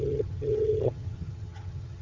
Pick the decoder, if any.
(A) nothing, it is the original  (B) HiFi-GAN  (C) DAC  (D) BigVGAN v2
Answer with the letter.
B